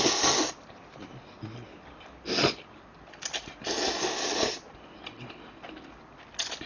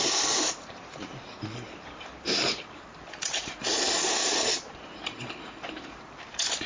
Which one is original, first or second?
first